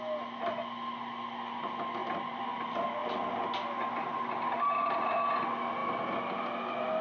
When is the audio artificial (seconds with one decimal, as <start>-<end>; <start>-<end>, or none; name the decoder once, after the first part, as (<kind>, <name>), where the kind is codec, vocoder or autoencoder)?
none